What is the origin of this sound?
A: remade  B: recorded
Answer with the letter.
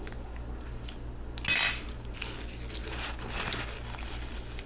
B